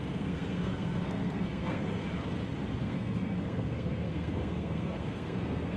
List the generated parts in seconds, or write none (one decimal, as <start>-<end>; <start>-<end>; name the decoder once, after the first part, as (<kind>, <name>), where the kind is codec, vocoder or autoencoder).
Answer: 0.0-2.0 (codec, SNAC); 2.8-5.8